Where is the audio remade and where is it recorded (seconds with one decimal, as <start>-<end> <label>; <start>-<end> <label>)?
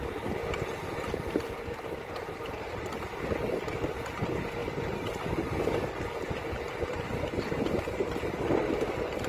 0.0-0.4 remade; 0.4-1.1 recorded; 1.1-4.6 remade; 4.6-6.2 recorded; 6.2-9.3 remade